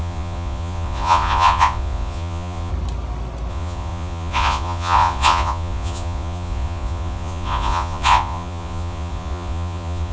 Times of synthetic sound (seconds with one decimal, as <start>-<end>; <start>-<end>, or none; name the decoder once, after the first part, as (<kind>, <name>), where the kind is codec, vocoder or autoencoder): 0.0-2.7 (vocoder, Vocos); 3.5-10.1